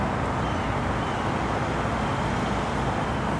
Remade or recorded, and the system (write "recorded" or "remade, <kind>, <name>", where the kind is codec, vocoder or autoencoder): recorded